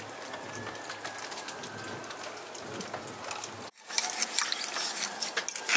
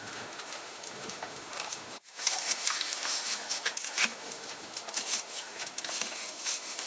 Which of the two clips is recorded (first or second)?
first